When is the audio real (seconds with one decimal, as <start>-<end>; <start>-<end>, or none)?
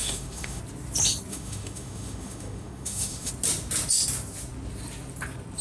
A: 0.6-1.3; 3.3-5.6